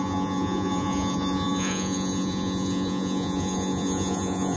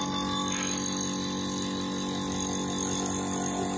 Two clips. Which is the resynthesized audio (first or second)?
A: first